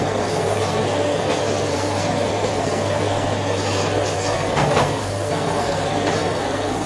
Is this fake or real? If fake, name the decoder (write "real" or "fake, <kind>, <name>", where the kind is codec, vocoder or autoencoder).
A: fake, codec, SNAC